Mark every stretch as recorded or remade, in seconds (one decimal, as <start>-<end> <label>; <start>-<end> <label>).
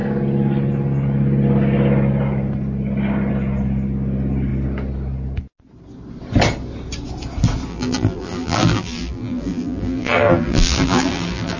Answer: 0.0-7.7 recorded; 7.7-11.6 remade